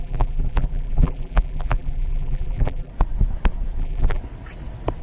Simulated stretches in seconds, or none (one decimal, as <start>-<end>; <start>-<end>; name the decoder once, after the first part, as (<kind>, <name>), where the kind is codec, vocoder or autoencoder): 0.0-2.9 (vocoder, BigVGAN v2); 3.8-4.2